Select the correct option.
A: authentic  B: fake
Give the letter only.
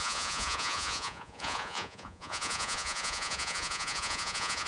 B